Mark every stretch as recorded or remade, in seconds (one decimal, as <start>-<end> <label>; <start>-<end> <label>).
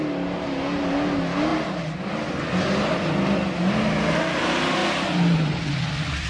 0.0-4.8 recorded; 4.8-6.3 remade